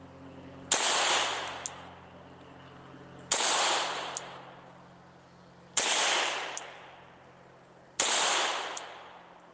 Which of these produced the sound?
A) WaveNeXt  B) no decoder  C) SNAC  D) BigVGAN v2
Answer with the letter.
B